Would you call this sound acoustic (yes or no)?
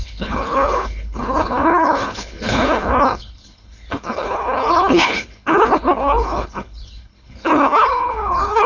no